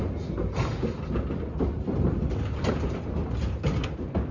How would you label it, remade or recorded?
recorded